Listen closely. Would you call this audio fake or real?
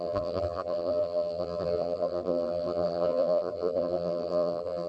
fake